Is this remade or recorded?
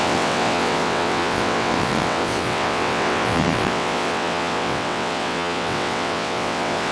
remade